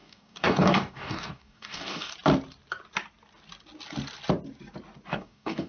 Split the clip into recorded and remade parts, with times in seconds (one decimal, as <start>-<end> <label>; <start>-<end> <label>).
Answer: 0.0-2.1 remade; 2.1-5.1 recorded; 5.1-5.7 remade